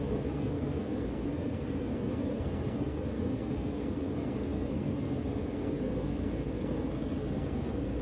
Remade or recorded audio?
remade